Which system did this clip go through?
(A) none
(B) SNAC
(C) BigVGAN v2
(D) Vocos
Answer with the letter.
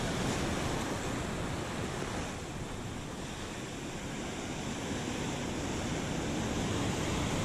A